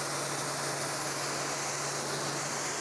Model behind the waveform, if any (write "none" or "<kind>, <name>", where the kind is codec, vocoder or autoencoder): none